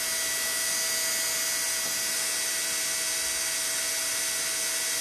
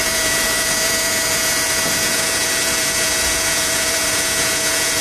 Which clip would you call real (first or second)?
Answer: first